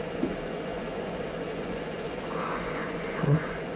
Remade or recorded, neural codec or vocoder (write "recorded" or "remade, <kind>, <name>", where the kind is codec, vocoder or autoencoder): remade, vocoder, Vocos